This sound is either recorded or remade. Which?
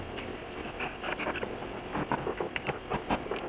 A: recorded